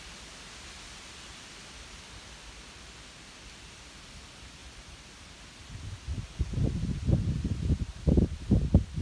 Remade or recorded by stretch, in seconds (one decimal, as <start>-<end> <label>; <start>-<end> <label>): 0.0-9.0 recorded